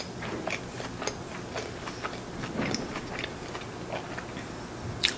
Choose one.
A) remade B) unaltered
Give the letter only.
B